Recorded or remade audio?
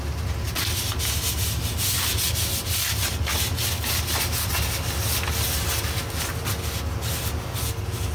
recorded